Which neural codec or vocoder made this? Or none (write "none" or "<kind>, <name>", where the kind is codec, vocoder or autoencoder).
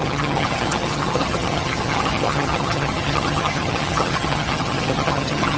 vocoder, HiFi-GAN